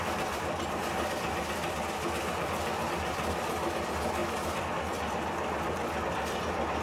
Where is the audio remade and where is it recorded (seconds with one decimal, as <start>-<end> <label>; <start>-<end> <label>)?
0.0-6.8 recorded